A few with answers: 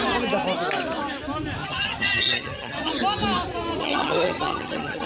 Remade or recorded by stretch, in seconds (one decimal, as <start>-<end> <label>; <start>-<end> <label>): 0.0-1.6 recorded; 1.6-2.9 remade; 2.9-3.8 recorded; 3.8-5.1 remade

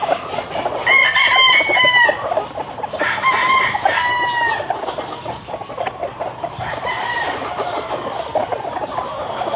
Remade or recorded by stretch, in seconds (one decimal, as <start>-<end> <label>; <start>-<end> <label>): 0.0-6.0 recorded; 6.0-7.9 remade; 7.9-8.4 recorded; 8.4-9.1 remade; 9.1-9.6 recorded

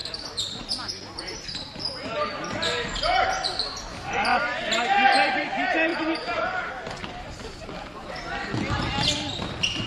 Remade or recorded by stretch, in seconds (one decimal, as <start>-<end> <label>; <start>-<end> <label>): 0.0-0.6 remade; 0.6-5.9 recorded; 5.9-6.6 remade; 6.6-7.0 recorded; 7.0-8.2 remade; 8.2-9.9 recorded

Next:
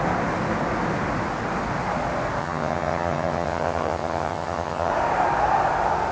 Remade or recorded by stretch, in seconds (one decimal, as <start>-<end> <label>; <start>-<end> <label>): 0.0-2.4 recorded; 2.4-4.9 remade; 4.9-6.1 recorded

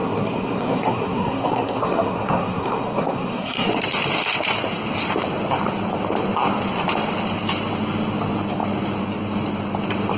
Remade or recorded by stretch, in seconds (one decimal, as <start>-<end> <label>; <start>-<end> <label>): 0.0-3.7 remade; 3.7-10.2 recorded

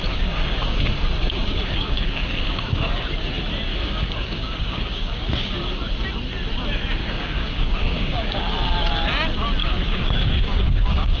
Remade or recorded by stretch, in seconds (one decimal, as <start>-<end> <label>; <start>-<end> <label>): 0.0-3.1 remade; 3.1-3.7 recorded; 3.7-5.3 remade; 5.3-7.0 recorded; 7.0-8.4 remade; 8.4-9.6 recorded; 9.6-11.2 remade